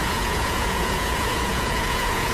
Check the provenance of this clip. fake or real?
fake